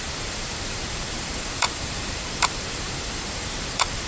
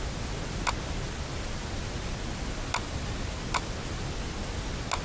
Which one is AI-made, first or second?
first